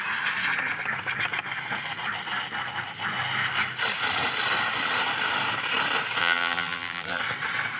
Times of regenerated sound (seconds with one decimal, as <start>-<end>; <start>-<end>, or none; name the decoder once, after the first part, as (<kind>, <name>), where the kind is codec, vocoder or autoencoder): 6.2-7.2 (vocoder, BigVGAN v2)